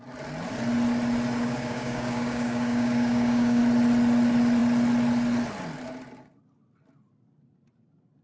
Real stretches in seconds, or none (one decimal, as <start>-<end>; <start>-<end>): 0.0-1.4; 3.6-8.2